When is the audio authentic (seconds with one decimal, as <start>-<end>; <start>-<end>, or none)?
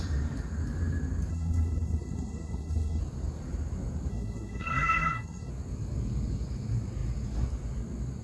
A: 0.0-1.3; 3.0-4.1; 5.5-8.2